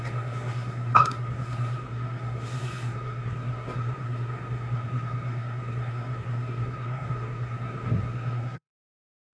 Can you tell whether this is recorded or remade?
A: remade